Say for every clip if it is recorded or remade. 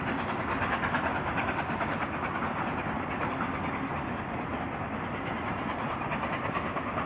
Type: recorded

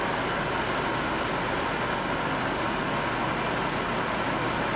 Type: recorded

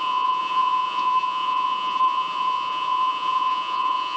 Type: remade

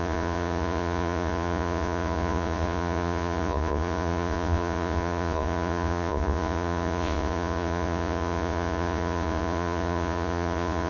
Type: remade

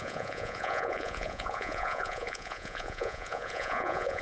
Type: remade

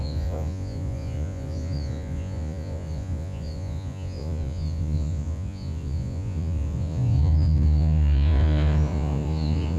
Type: remade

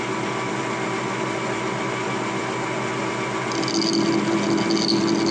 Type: recorded